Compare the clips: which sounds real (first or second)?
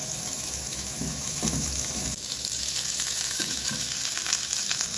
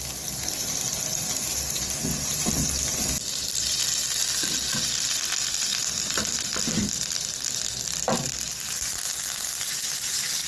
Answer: second